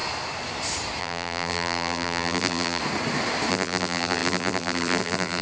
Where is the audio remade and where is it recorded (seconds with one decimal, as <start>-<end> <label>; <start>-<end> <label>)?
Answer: 0.0-1.0 recorded; 1.0-2.8 remade; 2.8-3.5 recorded; 3.5-5.4 remade

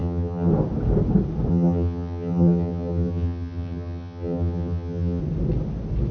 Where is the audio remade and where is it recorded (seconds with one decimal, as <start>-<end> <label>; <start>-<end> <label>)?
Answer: 0.0-0.5 remade; 0.5-1.5 recorded; 1.5-5.2 remade; 5.2-6.1 recorded

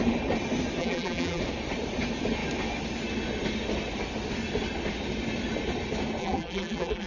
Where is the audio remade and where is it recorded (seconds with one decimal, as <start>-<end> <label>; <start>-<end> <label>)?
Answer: 0.0-0.8 recorded; 0.8-1.4 remade; 1.4-6.2 recorded; 6.2-7.1 remade

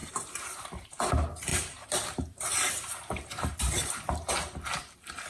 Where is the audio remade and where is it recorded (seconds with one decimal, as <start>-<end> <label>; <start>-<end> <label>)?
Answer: 0.0-1.1 remade; 1.1-1.5 recorded; 1.5-4.3 remade; 4.3-5.3 recorded

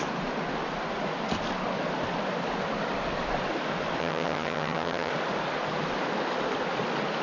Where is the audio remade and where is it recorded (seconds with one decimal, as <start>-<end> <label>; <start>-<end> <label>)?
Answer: 0.0-4.0 recorded; 4.0-5.1 remade; 5.1-7.2 recorded

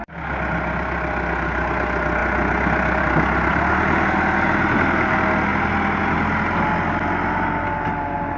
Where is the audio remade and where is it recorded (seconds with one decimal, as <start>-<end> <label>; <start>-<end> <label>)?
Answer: 0.0-8.4 recorded

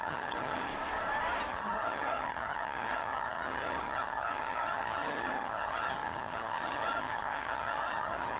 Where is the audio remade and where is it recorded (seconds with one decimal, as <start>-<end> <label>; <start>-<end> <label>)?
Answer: 0.0-0.7 remade; 0.7-1.5 recorded; 1.5-8.4 remade

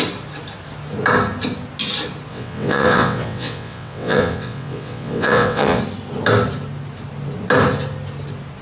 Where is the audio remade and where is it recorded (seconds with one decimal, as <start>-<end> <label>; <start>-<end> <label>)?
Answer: 0.0-2.3 recorded; 2.3-5.8 remade; 5.8-8.6 recorded